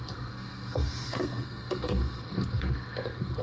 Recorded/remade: remade